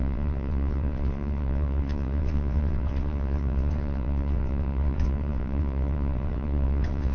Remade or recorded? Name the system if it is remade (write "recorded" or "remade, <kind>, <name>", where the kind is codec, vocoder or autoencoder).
remade, vocoder, WaveNeXt